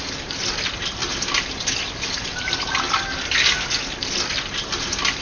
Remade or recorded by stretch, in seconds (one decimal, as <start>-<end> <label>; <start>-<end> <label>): 0.0-5.2 recorded